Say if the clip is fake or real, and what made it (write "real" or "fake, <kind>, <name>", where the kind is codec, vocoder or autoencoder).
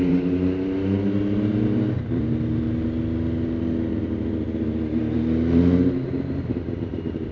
real